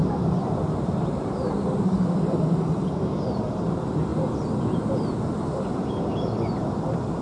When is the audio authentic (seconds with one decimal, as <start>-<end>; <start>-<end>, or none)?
2.9-4.1; 6.0-7.2